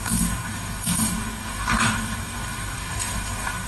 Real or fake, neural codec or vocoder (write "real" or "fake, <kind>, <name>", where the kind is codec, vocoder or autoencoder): fake, codec, DAC